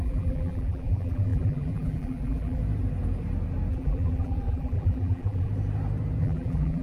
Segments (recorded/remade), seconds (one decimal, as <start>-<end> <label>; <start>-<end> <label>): 0.0-2.6 remade; 2.6-3.7 recorded; 3.7-5.5 remade; 5.5-6.2 recorded; 6.2-6.8 remade